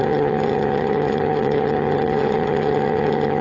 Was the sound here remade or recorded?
remade